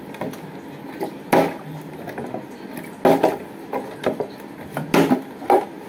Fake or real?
real